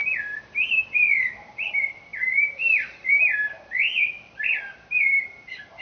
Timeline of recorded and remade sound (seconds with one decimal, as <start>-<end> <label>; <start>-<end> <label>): 0.0-0.7 recorded; 0.7-5.8 remade